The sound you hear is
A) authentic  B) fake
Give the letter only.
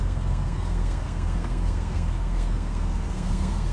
B